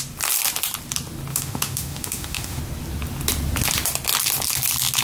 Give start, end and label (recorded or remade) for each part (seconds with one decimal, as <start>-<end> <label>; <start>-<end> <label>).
0.0-1.3 recorded; 1.3-2.6 remade; 2.6-5.0 recorded